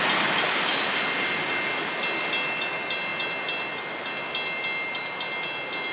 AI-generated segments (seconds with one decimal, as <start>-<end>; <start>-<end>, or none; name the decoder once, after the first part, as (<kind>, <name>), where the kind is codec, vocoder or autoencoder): none